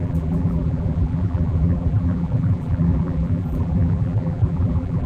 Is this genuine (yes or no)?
no